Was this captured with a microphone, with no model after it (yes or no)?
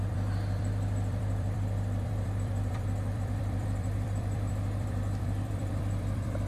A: no